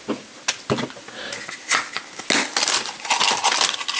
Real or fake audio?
real